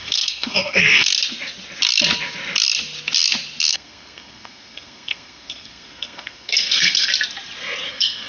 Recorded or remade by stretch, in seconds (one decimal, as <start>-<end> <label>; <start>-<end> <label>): 0.0-1.1 remade; 1.1-3.6 recorded; 3.6-7.1 remade; 7.1-7.9 recorded; 7.9-8.3 remade